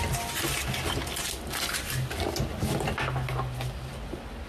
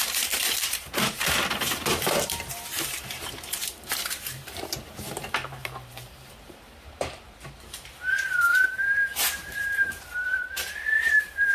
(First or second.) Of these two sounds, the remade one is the second